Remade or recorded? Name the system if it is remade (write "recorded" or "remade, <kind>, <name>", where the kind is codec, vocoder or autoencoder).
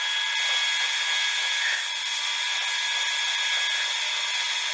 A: recorded